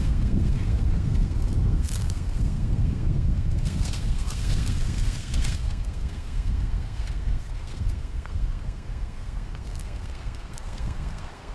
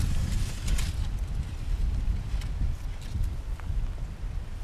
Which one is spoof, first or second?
first